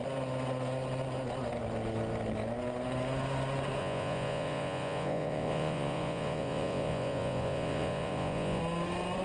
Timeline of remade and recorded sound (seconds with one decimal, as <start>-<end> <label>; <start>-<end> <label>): 0.0-3.8 recorded; 3.8-8.6 remade; 8.6-9.2 recorded